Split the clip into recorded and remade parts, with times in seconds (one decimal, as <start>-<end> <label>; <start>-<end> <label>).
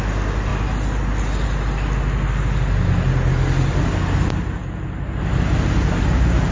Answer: 0.0-6.5 recorded